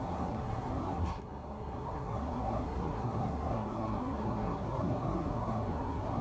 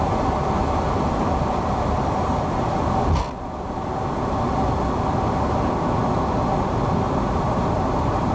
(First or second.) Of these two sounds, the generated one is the first